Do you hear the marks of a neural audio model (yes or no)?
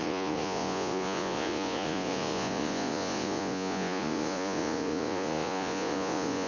yes